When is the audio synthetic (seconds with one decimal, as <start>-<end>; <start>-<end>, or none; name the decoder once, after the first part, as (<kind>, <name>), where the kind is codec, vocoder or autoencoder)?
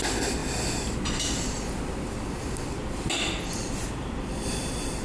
none